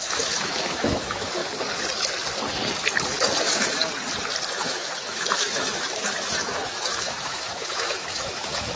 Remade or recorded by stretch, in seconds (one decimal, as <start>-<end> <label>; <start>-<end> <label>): 0.0-1.4 remade; 1.4-3.4 recorded; 3.4-3.8 remade; 3.8-4.6 recorded; 4.6-8.8 remade